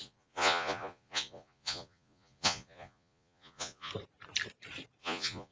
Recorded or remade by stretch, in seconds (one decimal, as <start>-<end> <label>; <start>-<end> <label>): 0.0-3.9 remade; 3.9-5.0 recorded; 5.0-5.5 remade